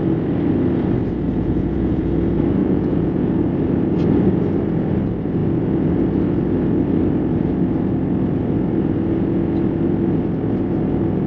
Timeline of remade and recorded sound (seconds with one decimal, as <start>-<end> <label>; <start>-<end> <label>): 0.0-1.3 recorded; 1.3-2.1 remade; 2.1-2.6 recorded; 2.6-3.3 remade; 3.3-11.3 recorded